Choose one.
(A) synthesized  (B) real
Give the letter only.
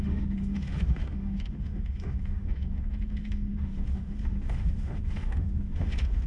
A